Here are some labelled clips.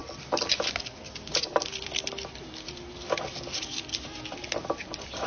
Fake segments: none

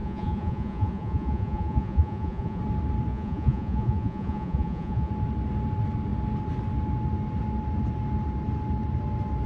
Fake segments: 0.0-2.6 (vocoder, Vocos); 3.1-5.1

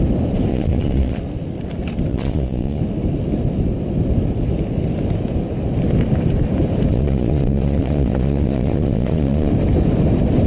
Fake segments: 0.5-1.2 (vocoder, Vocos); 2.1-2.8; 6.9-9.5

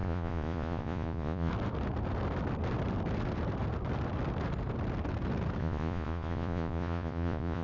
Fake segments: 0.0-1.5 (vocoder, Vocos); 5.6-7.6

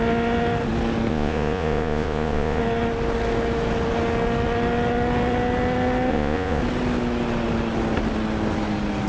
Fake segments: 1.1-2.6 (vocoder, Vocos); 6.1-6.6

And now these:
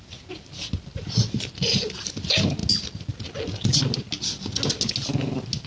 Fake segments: none